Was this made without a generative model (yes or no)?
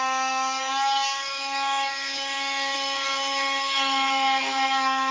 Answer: no